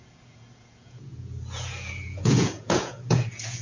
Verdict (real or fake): fake